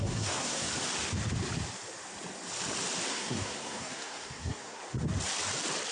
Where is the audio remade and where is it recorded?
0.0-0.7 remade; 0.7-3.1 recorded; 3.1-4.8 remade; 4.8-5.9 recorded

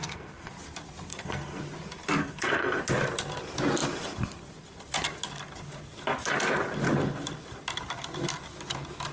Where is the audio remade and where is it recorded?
0.0-0.5 remade; 0.5-1.1 recorded; 1.1-1.6 remade; 1.6-2.2 recorded; 2.2-2.8 remade; 2.8-9.1 recorded

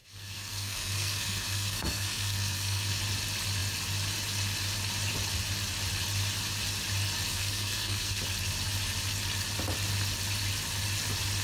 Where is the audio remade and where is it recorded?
0.0-3.0 remade; 3.0-7.3 recorded; 7.3-8.2 remade; 8.2-11.4 recorded